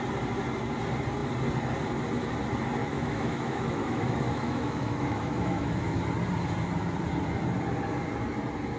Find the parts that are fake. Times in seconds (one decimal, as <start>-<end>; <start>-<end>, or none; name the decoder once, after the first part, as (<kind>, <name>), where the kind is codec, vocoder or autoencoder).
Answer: 2.8-6.0 (autoencoder, DAC-VAE)